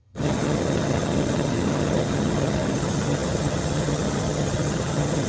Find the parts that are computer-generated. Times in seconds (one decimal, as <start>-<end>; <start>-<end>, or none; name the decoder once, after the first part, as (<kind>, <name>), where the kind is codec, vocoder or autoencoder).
0.0-5.3 (vocoder, HiFi-GAN)